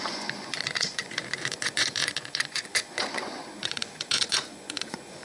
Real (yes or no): no